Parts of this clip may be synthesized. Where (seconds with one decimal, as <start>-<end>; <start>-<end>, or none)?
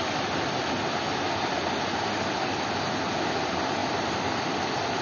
none